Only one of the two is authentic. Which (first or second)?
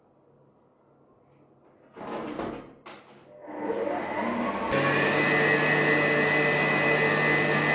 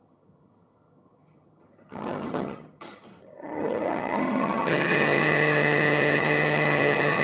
first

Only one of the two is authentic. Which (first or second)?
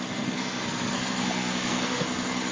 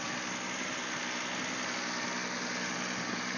second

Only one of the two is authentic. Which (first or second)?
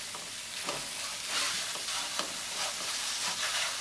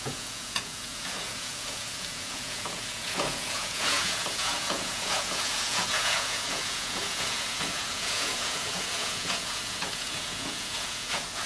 first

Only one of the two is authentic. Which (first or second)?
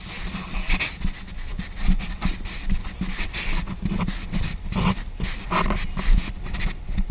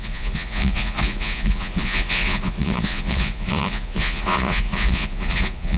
first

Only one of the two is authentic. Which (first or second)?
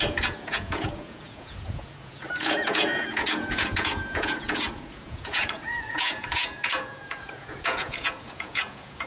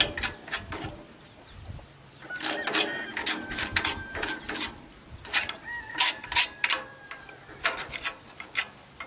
second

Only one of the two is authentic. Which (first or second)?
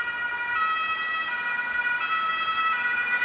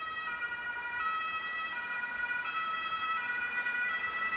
first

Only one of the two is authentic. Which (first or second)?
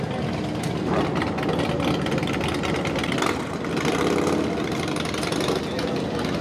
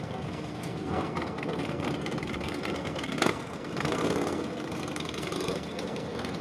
first